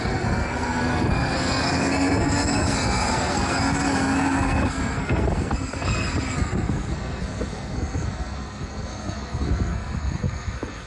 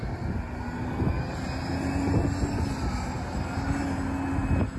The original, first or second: second